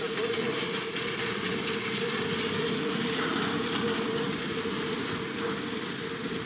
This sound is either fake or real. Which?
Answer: real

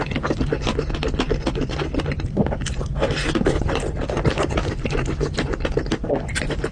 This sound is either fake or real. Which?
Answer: real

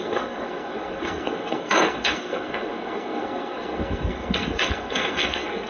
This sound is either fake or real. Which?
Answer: fake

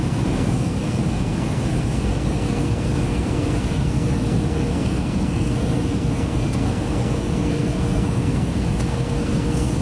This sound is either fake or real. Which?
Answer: fake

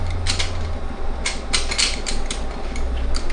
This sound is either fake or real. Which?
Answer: real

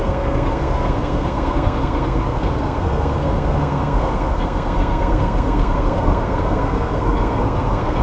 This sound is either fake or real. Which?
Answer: fake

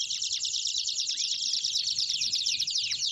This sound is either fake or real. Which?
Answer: fake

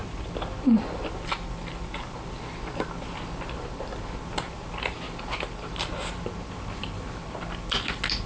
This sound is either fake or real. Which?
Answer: real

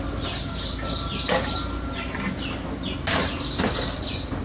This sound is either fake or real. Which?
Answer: real